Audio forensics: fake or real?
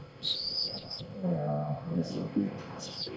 fake